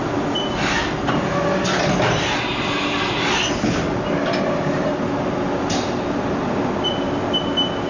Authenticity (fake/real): real